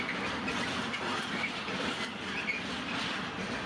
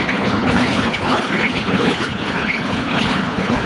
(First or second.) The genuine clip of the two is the first